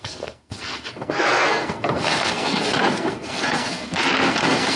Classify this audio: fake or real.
fake